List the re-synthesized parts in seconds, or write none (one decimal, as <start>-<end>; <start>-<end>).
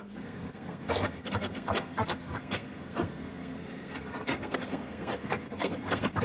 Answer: 0.0-6.2